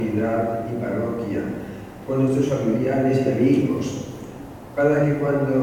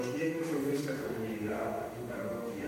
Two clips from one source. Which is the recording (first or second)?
first